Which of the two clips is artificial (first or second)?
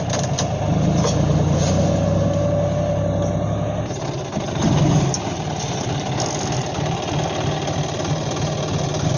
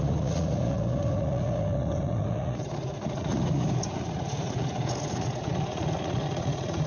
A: second